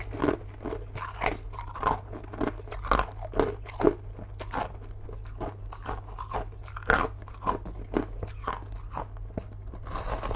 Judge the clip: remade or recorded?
recorded